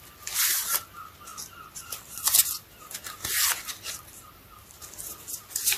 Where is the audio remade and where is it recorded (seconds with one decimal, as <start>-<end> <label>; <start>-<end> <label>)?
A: 0.0-5.8 recorded